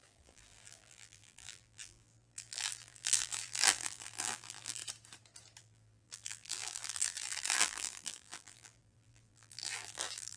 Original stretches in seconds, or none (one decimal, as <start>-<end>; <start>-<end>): 4.8-5.6